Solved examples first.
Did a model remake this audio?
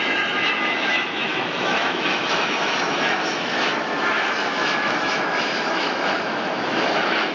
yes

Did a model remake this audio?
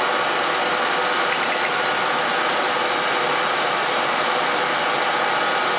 no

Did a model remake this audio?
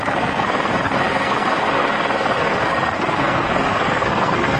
yes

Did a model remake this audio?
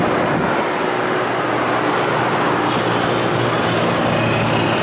no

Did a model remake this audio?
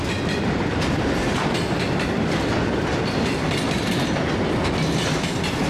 no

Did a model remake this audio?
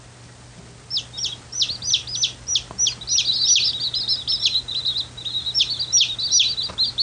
no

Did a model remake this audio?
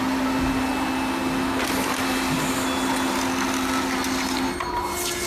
no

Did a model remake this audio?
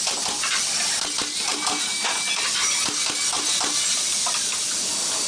no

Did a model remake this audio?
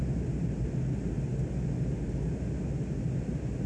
no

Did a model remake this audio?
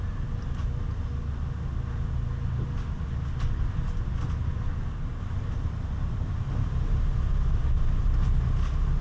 no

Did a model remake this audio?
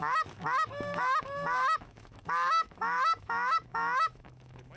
yes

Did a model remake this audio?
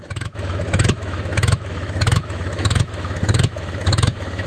yes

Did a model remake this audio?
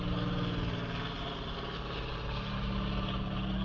no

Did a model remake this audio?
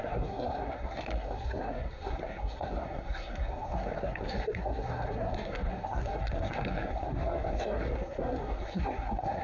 yes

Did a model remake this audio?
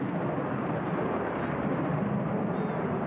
no